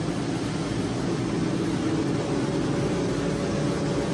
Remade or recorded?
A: recorded